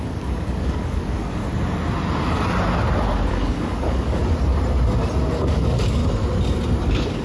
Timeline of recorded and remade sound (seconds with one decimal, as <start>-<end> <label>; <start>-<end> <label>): 0.0-1.4 remade; 1.4-3.3 recorded; 3.3-4.2 remade; 4.2-5.5 recorded; 5.5-6.0 remade; 6.0-6.8 recorded; 6.8-7.2 remade

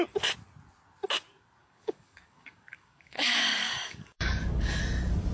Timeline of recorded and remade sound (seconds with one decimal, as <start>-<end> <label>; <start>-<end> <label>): 0.0-1.6 recorded; 1.6-4.8 remade; 4.8-5.3 recorded

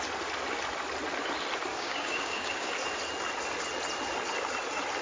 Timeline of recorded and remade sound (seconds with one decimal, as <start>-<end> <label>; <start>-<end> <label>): 0.0-1.7 recorded; 1.7-2.7 remade; 2.7-5.0 recorded

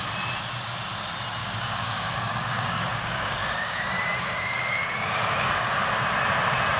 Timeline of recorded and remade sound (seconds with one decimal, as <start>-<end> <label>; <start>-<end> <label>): 0.0-1.4 recorded; 1.4-5.5 remade; 5.5-6.8 recorded

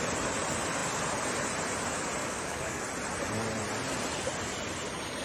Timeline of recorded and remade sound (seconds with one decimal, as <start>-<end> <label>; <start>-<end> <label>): 0.0-2.2 recorded; 2.2-2.8 remade; 2.8-5.2 recorded

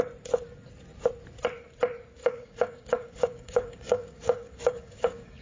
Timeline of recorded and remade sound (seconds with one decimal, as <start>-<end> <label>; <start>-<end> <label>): 0.0-2.2 recorded; 2.2-5.4 remade

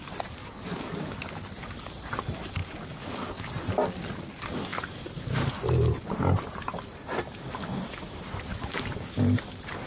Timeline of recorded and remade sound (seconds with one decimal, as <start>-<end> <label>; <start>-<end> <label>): 0.0-0.4 recorded; 0.4-1.4 remade; 1.4-2.6 recorded; 2.6-3.5 remade; 3.5-8.5 recorded; 8.5-9.2 remade; 9.2-9.9 recorded